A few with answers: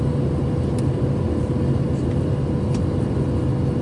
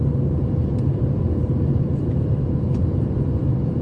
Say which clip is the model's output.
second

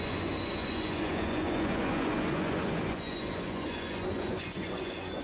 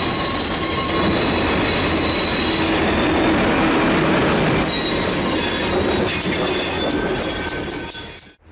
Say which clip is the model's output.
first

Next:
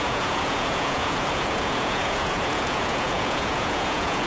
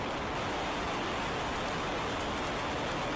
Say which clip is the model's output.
first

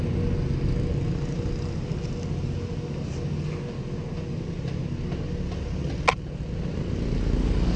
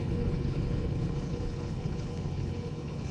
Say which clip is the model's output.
second